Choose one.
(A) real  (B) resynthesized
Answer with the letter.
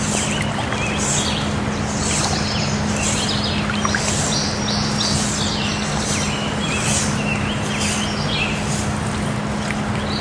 A